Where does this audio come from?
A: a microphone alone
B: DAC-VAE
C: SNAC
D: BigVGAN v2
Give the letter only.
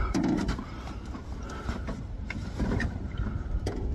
D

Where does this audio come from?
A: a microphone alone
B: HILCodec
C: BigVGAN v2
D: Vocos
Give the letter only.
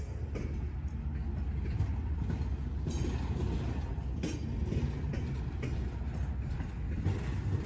A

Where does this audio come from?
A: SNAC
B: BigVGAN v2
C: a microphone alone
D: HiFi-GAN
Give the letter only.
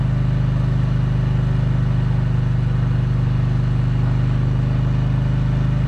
C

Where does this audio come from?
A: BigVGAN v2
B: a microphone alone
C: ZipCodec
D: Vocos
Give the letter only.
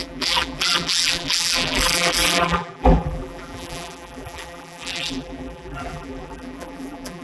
A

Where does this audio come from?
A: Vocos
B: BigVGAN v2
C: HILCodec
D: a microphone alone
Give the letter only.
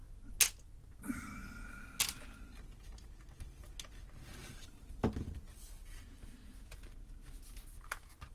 D